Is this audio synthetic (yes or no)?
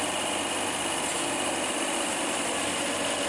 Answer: no